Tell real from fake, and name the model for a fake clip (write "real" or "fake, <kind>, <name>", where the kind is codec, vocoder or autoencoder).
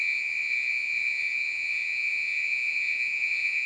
fake, vocoder, Vocos